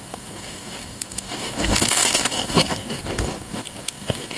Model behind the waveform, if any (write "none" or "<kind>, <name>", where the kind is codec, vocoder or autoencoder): codec, DAC